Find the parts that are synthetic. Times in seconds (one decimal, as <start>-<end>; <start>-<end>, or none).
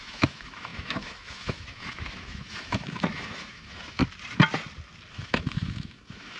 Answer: 0.0-4.0; 5.1-6.4